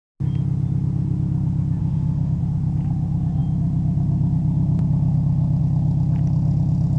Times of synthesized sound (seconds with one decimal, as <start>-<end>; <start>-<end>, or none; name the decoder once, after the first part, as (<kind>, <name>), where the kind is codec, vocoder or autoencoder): 1.8-2.4 (autoencoder, DAC-VAE)

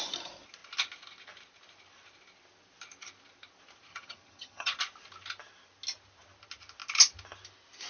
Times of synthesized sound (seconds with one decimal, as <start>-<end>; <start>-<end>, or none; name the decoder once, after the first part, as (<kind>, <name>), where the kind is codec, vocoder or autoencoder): 3.9-4.8 (vocoder, HiFi-GAN)